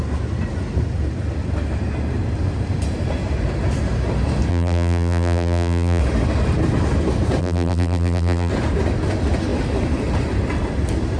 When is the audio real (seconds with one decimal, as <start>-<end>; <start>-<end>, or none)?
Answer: 0.0-4.5; 6.0-7.4; 8.5-11.2